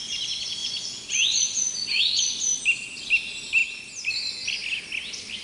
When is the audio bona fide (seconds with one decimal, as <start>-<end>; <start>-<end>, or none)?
0.0-0.6; 2.0-5.4